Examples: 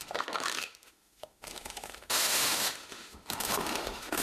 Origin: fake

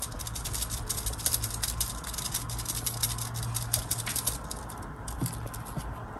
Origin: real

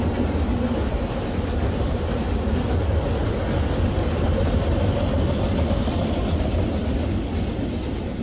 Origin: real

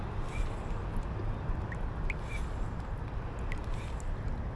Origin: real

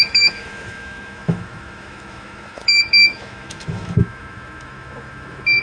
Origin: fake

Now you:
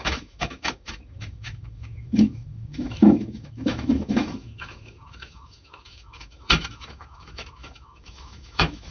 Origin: fake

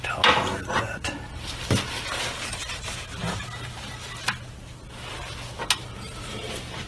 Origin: real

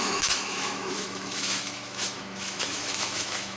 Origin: fake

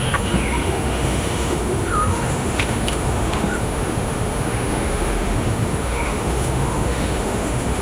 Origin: fake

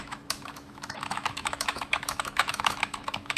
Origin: fake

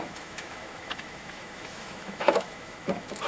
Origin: fake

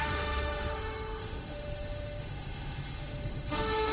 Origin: fake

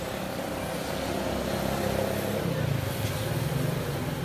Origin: real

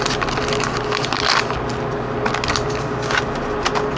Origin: real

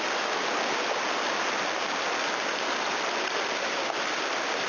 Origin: real